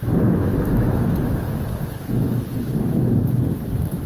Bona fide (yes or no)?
no